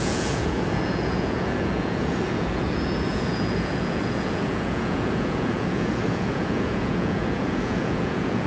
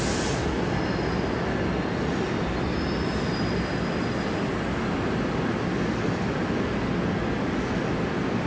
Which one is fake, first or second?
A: first